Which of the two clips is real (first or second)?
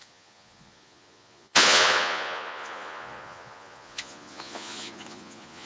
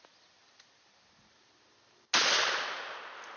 second